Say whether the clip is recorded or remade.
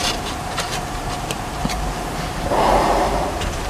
remade